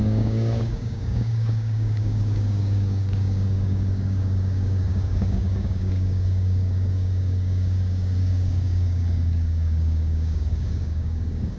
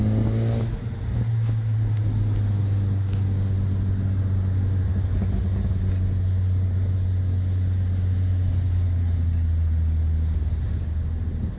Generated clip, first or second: first